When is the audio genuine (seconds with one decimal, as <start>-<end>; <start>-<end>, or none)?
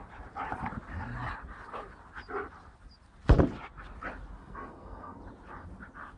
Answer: 0.0-4.4; 5.2-6.2